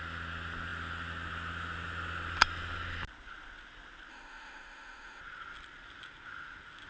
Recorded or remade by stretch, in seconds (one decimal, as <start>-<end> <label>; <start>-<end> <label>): 0.0-4.1 recorded; 4.1-5.2 remade; 5.2-6.9 recorded